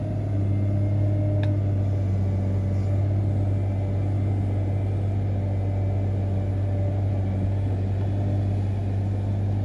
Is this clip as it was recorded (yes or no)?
yes